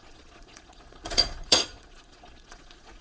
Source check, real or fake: fake